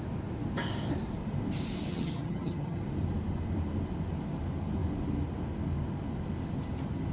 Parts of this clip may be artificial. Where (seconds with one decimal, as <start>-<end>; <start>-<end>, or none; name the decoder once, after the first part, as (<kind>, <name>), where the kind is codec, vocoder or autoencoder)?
1.9-2.8 (vocoder, HiFi-GAN)